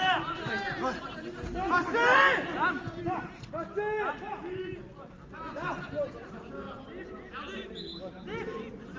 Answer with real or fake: real